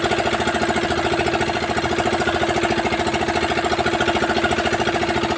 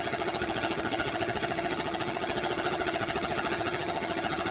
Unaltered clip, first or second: first